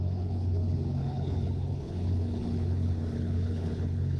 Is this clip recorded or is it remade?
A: remade